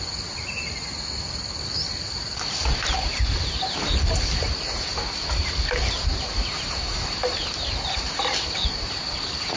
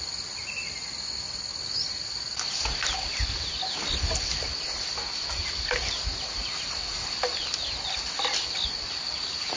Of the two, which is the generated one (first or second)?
first